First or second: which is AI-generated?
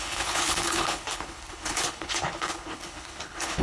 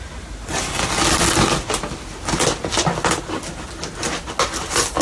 first